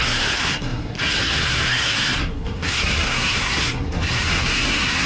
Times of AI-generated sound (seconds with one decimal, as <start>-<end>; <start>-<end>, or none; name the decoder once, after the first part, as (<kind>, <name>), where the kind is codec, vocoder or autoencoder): 0.0-5.1 (codec, SNAC)

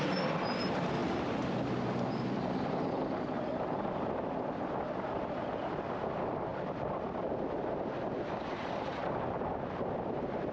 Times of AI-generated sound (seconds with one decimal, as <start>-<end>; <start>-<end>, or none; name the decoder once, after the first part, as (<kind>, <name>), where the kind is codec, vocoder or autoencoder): none

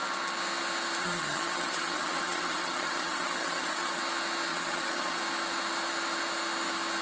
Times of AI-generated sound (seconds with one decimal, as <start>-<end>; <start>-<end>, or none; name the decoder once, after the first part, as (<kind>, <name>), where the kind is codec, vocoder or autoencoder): 1.0-4.0 (vocoder, HiFi-GAN); 4.5-5.2

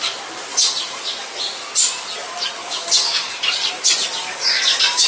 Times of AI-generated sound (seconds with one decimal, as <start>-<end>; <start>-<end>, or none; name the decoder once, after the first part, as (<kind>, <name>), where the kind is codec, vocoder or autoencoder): 2.6-3.3 (codec, DAC); 4.2-5.1

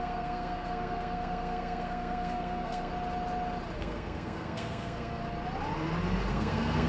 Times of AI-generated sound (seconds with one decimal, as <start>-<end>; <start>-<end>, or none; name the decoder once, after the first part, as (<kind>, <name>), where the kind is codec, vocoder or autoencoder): 0.0-2.9 (codec, SNAC); 3.8-5.2; 6.3-6.9

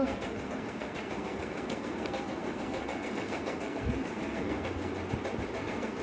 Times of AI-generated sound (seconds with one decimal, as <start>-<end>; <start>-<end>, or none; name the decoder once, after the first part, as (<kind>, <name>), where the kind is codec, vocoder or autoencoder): 0.0-4.9 (codec, SNAC); 5.6-6.0

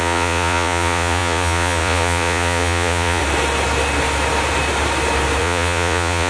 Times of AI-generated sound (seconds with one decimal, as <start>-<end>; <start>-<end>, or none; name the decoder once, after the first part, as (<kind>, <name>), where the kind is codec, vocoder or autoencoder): 0.0-3.2 (vocoder, Vocos); 5.4-6.3